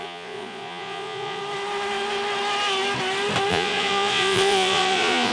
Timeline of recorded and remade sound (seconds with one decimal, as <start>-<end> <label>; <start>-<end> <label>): 0.0-1.4 remade; 1.4-3.5 recorded; 3.5-5.3 remade